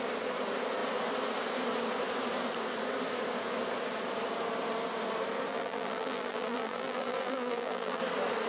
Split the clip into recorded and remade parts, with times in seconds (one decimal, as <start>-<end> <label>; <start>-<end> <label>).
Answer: 0.0-5.5 recorded; 5.5-8.0 remade; 8.0-8.5 recorded